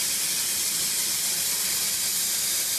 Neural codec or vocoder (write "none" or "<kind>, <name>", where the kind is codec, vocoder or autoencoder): none